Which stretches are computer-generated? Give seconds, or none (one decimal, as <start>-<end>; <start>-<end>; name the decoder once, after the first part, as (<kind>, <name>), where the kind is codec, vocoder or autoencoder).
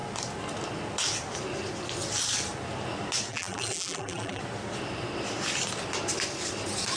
3.3-4.4 (vocoder, BigVGAN v2)